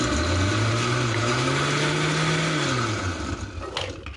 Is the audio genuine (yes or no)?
yes